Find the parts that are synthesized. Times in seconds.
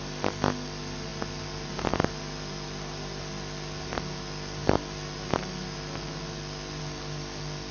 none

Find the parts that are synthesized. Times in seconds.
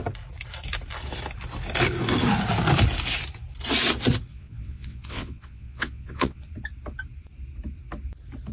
4.3-6.5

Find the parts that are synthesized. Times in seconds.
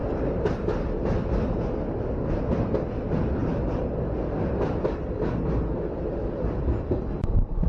none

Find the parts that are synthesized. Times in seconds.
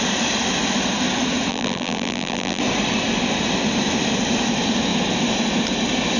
1.5-2.6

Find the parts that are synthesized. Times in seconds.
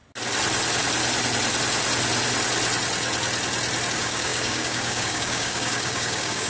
3.9-6.5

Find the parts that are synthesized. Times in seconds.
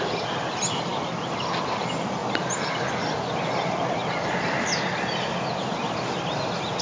none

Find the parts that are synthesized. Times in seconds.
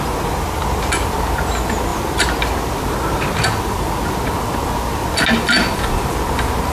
none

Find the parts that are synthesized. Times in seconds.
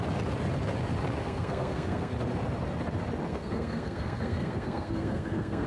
1.2-2.1; 3.3-5.7